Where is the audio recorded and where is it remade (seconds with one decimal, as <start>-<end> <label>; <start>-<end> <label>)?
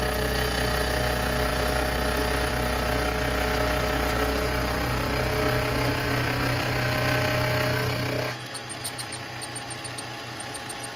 0.0-11.0 recorded